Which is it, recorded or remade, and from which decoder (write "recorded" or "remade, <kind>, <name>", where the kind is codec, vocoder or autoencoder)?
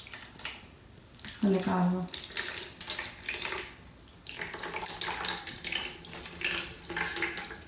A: recorded